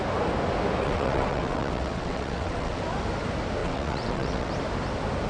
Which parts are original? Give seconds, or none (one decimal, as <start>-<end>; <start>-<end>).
0.0-0.8; 2.8-3.6; 4.5-5.3